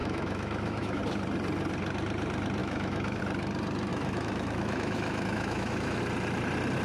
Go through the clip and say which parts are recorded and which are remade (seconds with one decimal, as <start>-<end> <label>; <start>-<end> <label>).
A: 0.0-1.0 remade; 1.0-2.6 recorded; 2.6-3.2 remade; 3.2-3.9 recorded; 3.9-6.0 remade; 6.0-6.8 recorded